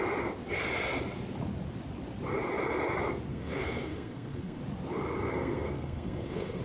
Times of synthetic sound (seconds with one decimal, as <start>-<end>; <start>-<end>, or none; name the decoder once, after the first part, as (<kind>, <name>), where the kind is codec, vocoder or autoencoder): 3.3-4.6 (codec, SNAC); 5.3-6.6